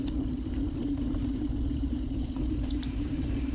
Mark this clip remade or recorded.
remade